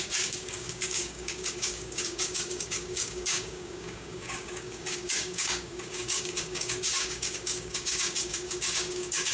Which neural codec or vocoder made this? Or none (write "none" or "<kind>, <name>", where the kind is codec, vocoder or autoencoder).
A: codec, DAC